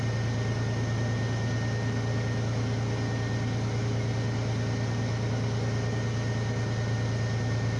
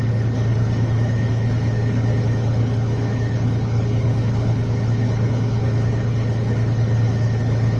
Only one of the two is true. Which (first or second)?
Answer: first